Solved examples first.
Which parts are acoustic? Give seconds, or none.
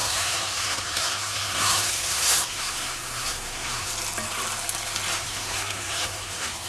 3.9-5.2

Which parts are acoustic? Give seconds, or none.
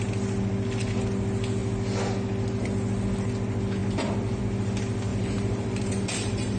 0.0-5.1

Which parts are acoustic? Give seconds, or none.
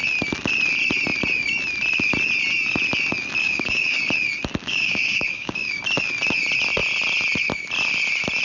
0.0-3.4; 4.1-4.6; 5.8-8.4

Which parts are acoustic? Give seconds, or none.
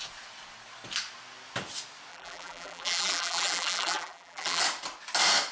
0.0-2.1; 4.6-5.5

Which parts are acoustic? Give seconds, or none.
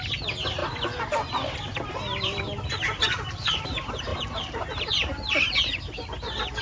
0.0-6.6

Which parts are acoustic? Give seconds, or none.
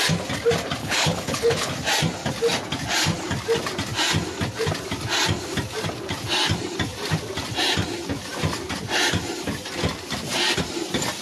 0.0-0.8; 1.7-11.2